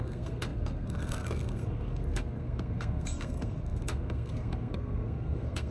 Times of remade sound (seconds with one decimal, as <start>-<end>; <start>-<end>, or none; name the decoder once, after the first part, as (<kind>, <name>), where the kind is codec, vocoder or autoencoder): 0.0-5.7 (codec, SNAC)